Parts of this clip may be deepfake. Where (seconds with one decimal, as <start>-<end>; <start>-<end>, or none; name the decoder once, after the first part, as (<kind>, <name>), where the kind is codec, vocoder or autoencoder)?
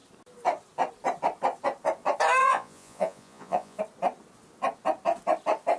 2.4-3.8 (vocoder, Vocos)